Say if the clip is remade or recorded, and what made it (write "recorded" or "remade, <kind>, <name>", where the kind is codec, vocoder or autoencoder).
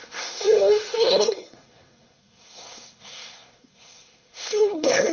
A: remade, codec, SNAC